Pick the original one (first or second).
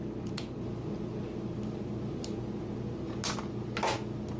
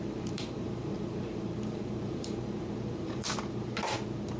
first